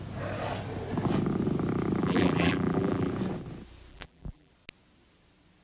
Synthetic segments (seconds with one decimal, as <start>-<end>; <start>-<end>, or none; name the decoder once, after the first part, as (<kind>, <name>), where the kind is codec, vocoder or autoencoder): 2.0-3.1 (vocoder, BigVGAN v2); 3.9-4.5